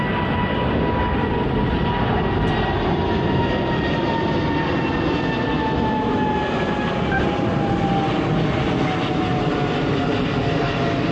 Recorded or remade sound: recorded